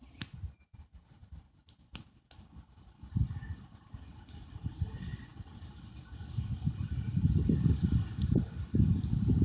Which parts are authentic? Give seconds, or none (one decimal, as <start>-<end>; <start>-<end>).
0.0-9.4